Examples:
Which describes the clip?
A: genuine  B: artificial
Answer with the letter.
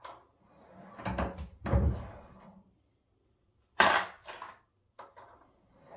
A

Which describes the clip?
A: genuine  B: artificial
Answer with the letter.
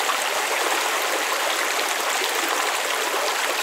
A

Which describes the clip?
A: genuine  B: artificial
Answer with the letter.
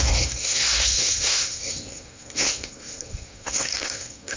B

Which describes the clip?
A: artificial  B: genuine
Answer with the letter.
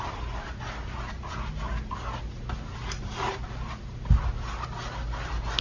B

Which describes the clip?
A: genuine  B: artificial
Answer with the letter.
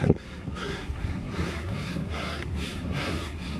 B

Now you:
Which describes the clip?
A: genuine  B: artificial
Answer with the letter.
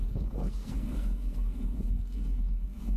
B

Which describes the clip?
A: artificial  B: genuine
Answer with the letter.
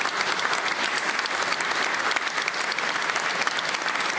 B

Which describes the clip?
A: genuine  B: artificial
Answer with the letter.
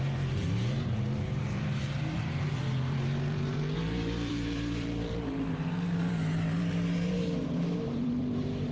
B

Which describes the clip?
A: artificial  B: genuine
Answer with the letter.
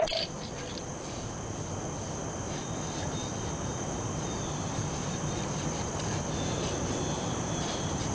A